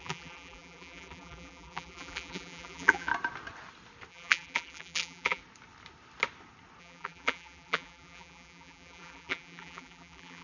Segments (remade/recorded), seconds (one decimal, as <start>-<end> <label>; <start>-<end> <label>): 0.0-3.1 remade; 3.1-4.1 recorded; 4.1-5.4 remade; 5.4-6.8 recorded; 6.8-10.4 remade

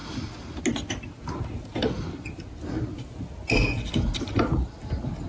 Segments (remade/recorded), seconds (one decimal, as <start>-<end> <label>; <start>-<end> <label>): 0.0-5.3 recorded